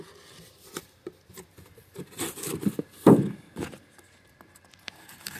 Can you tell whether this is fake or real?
real